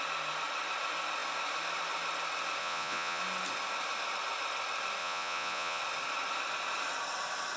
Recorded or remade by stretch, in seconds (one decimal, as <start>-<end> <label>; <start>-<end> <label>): 0.0-2.6 recorded; 2.6-3.2 remade; 3.2-5.0 recorded; 5.0-5.8 remade; 5.8-7.6 recorded